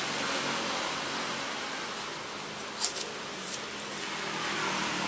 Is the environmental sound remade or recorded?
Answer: recorded